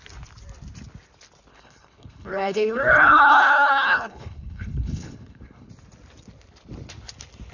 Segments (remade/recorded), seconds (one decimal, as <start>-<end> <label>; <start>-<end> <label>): 0.0-1.5 recorded; 1.5-5.7 remade; 5.7-7.5 recorded

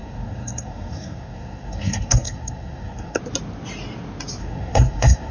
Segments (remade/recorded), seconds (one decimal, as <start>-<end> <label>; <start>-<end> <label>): 0.0-3.2 remade; 3.2-4.4 recorded; 4.4-5.3 remade

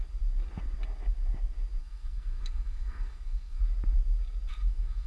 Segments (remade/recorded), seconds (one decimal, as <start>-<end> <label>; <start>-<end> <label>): 0.0-1.8 recorded; 1.8-3.6 remade; 3.6-4.5 recorded; 4.5-5.1 remade

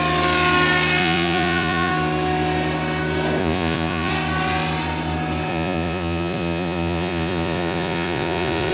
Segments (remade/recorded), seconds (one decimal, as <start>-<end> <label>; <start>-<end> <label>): 0.0-1.0 recorded; 1.0-1.9 remade; 1.9-3.4 recorded; 3.4-4.1 remade; 4.1-5.5 recorded; 5.5-8.7 remade

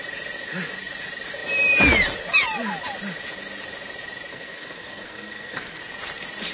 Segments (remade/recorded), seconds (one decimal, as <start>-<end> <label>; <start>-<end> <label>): 0.0-4.3 recorded; 4.3-5.8 remade; 5.8-6.5 recorded